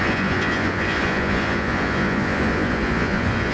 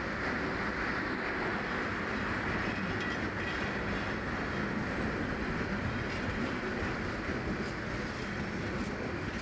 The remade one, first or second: first